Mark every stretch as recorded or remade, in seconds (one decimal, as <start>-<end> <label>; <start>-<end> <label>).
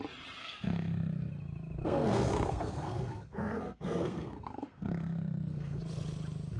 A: 0.0-0.4 recorded; 0.4-1.3 remade; 1.3-1.8 recorded; 1.8-5.8 remade; 5.8-6.6 recorded